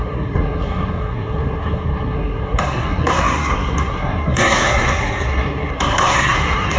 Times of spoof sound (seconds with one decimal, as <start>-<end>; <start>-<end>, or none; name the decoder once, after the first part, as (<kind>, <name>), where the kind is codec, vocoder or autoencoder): 0.0-6.8 (codec, SNAC)